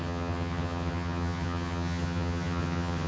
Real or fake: fake